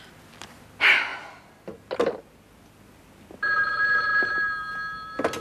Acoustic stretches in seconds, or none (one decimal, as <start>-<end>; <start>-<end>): 0.0-5.4